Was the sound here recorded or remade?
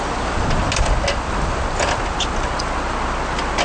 recorded